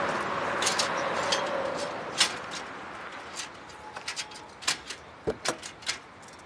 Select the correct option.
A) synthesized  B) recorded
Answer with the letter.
B